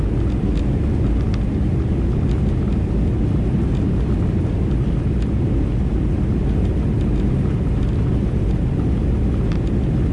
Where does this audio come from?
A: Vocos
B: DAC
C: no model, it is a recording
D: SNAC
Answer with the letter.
C